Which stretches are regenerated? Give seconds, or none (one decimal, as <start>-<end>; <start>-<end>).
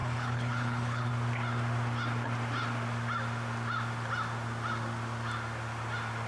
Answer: 0.0-1.1